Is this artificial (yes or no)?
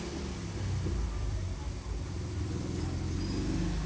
no